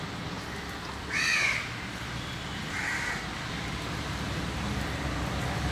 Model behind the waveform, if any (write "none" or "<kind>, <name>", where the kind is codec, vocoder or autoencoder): none